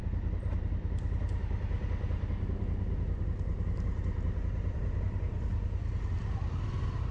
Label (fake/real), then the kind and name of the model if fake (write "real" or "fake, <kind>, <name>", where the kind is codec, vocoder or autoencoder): real